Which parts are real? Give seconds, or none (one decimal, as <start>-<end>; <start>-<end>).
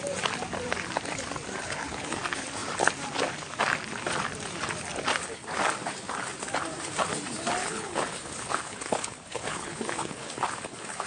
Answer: 0.0-1.6; 2.2-7.6